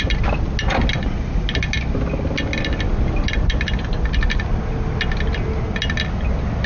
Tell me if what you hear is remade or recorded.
recorded